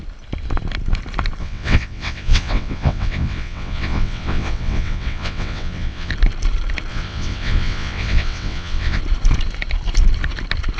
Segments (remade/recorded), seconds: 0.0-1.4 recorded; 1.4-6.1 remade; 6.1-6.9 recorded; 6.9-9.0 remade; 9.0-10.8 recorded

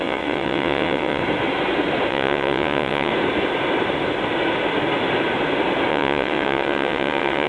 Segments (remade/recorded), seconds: 0.0-1.2 remade; 1.2-2.1 recorded; 2.1-3.1 remade; 3.1-5.9 recorded; 5.9-7.5 remade

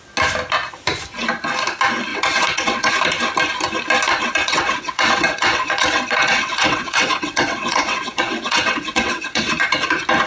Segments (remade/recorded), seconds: 0.0-2.1 recorded; 2.1-2.9 remade; 2.9-4.4 recorded; 4.4-9.5 remade; 9.5-10.3 recorded

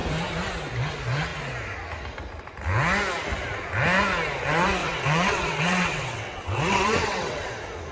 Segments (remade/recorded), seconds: 0.0-4.8 recorded; 4.8-7.5 remade; 7.5-7.9 recorded

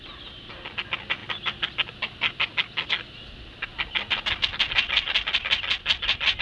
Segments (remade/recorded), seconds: 0.0-6.4 recorded

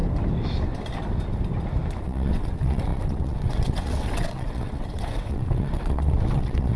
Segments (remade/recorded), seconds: 0.0-2.0 recorded; 2.0-6.8 remade